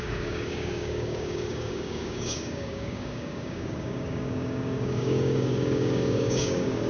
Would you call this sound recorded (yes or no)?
no